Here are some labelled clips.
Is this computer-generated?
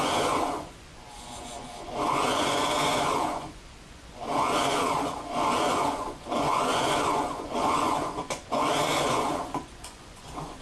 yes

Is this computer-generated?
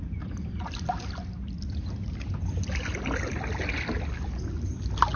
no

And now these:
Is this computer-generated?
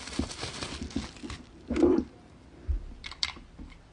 yes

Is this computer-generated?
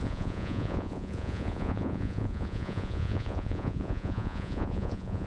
yes